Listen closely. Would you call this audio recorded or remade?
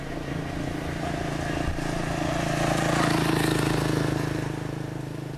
recorded